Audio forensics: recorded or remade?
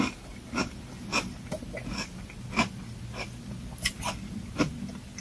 recorded